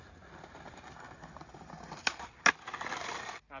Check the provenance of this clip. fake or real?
real